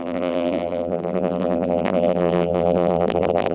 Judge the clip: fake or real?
fake